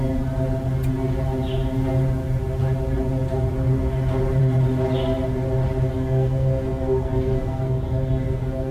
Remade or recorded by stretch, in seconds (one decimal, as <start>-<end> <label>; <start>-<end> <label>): 0.0-5.9 recorded; 5.9-8.7 remade